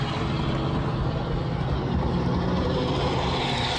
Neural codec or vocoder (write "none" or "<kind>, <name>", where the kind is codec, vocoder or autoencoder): none